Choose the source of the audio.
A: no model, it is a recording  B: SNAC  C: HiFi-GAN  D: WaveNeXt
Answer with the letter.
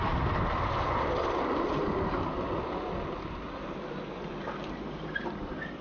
A